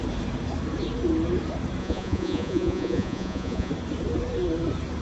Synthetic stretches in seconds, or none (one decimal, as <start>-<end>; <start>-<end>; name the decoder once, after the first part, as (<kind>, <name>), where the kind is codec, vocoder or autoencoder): 1.8-3.7 (vocoder, Vocos)